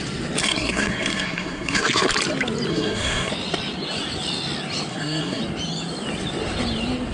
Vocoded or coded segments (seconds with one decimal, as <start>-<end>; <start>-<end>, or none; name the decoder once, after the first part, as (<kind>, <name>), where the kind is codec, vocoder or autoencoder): 0.4-2.1 (codec, SNAC); 2.7-3.3; 4.9-5.4